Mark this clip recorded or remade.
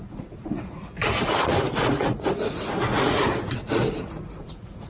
remade